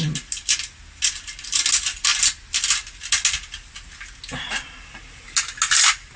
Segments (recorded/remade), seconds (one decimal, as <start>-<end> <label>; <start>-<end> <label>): 0.0-6.2 recorded